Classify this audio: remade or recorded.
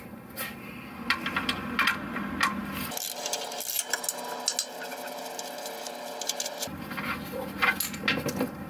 recorded